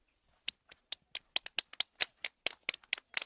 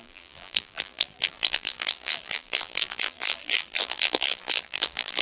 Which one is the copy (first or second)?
second